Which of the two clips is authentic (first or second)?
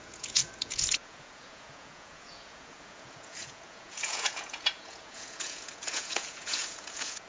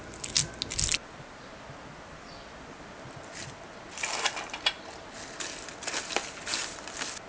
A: second